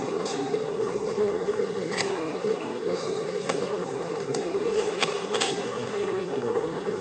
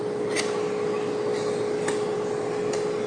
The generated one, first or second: first